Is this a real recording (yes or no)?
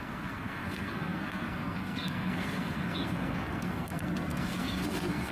no